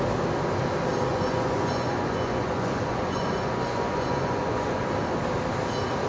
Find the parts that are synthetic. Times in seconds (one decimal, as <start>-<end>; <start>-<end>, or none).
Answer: 1.1-4.8